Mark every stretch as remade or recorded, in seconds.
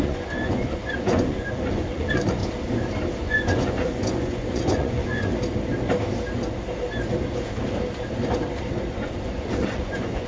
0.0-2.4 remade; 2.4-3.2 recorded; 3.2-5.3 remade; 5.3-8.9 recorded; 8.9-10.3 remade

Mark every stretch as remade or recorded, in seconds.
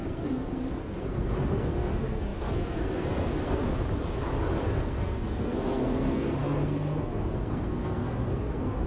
0.0-3.6 remade; 3.6-4.6 recorded; 4.6-8.9 remade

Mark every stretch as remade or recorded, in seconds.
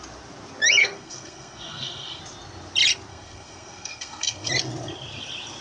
0.0-0.8 recorded; 0.8-2.2 remade; 2.2-3.1 recorded; 3.1-4.5 remade; 4.5-5.6 recorded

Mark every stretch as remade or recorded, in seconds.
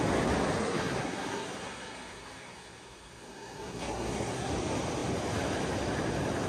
0.0-0.6 recorded; 0.6-4.5 remade; 4.5-6.5 recorded